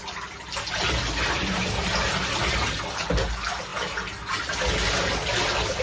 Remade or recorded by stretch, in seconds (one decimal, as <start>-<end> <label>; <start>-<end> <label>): 0.0-5.8 recorded